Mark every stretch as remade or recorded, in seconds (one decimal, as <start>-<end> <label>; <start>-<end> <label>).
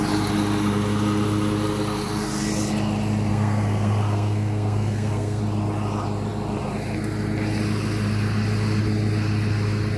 0.0-3.3 recorded; 3.3-5.4 remade; 5.4-10.0 recorded